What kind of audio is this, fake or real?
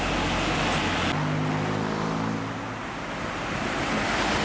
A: real